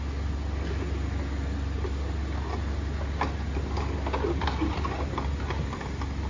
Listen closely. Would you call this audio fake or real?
real